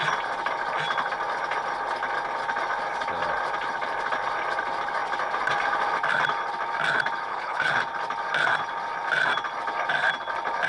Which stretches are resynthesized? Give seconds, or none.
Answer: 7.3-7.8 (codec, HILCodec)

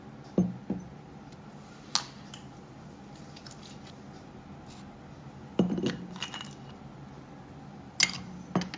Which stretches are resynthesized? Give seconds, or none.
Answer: none

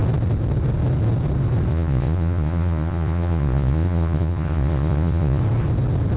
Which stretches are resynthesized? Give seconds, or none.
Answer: 1.7-5.4 (vocoder, Vocos)

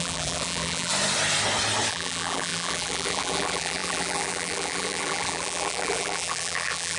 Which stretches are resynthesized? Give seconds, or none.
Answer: 0.0-0.9 (vocoder, BigVGAN v2); 1.9-7.0